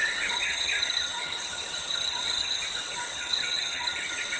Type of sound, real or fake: fake